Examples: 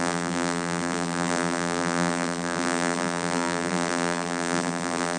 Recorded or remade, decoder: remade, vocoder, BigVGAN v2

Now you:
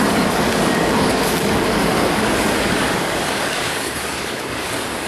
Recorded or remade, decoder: remade, codec, DAC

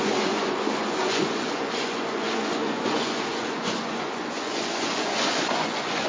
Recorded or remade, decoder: remade, vocoder, Vocos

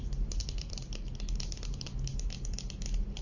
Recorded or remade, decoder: recorded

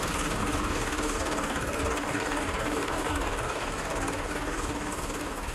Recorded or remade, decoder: remade, codec, DAC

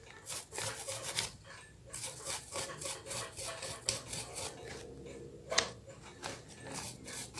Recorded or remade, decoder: recorded